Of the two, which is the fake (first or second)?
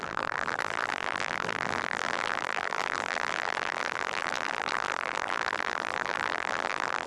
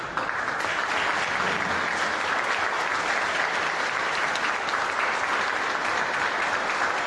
first